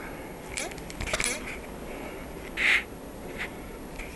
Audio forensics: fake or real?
real